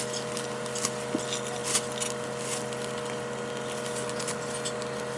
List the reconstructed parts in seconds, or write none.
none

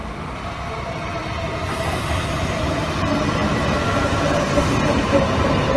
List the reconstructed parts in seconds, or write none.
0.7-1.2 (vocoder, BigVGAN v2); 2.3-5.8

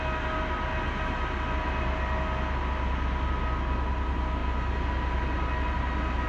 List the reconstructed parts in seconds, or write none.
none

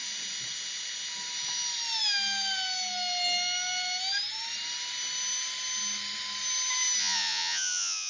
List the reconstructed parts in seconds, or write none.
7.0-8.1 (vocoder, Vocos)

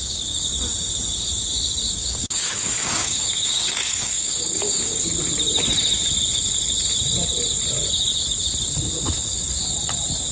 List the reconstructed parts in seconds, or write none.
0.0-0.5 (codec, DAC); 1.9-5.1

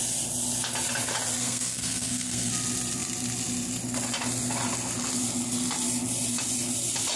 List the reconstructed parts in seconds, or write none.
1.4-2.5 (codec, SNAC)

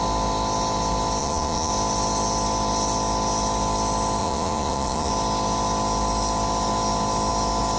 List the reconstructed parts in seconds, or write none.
1.2-1.7 (vocoder, Vocos); 4.2-5.1

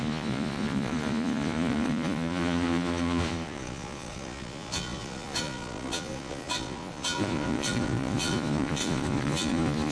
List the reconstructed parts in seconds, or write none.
0.0-9.9 (vocoder, Vocos)